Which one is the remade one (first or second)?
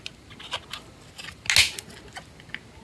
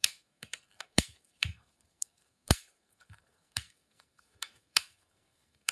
second